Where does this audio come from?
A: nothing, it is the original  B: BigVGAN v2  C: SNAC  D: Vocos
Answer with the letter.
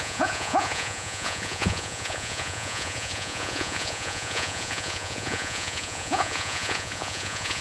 D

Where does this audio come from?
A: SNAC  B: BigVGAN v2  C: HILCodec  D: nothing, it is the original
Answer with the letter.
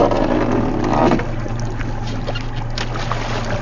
D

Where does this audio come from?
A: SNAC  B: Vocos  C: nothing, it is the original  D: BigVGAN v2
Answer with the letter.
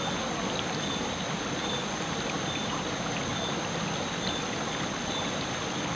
C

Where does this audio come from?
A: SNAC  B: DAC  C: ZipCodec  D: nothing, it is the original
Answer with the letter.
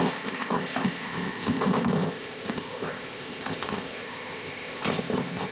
C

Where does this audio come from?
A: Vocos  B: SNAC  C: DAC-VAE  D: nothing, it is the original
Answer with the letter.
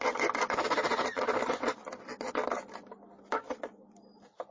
D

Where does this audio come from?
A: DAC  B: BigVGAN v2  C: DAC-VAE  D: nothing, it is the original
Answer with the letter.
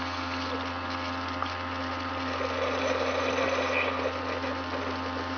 D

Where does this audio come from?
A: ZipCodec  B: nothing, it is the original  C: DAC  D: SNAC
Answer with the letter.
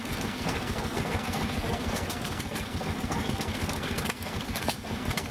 D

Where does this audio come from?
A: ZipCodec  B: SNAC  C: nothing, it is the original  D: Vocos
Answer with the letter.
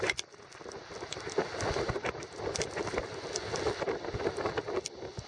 C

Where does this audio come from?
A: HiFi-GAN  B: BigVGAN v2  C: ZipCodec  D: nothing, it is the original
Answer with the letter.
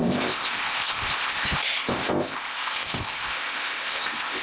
C